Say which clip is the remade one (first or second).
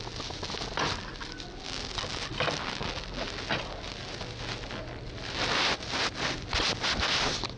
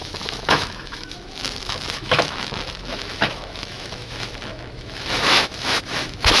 second